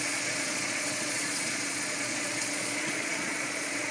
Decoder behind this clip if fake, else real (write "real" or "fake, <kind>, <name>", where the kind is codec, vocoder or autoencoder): fake, vocoder, Vocos